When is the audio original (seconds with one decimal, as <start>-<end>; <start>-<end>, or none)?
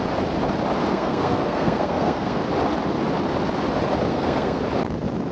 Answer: 0.0-0.9; 2.4-4.1; 4.6-5.3